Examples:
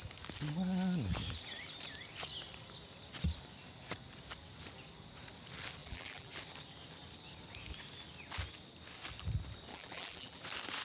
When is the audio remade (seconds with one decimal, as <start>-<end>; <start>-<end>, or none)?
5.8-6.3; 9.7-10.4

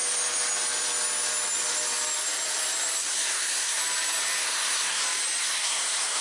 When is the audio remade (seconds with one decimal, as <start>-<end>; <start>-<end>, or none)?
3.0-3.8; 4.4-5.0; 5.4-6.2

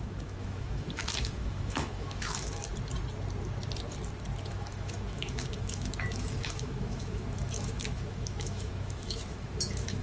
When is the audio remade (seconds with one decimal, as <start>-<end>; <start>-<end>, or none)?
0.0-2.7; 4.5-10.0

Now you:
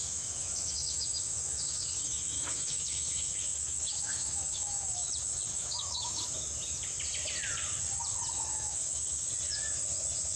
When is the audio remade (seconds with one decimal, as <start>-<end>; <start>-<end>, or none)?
0.0-5.1; 5.5-6.2; 8.5-9.3

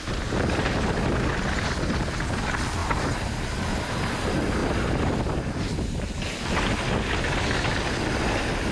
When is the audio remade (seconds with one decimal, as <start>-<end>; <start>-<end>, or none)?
none